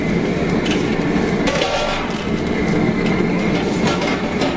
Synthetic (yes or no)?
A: no